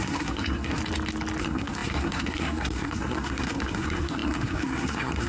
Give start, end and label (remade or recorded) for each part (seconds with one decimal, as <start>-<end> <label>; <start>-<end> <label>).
0.0-0.8 remade; 0.8-1.4 recorded; 1.4-5.3 remade